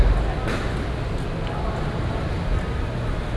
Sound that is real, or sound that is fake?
real